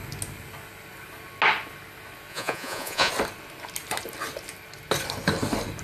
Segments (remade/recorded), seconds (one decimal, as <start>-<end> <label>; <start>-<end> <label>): 0.0-2.3 recorded; 2.3-3.1 remade; 3.1-5.8 recorded